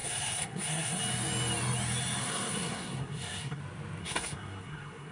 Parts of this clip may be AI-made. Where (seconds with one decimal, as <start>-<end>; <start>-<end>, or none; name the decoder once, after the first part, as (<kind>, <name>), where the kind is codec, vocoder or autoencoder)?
0.0-1.0 (codec, SNAC); 2.2-3.6; 4.0-5.1